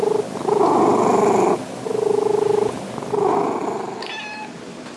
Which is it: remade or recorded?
recorded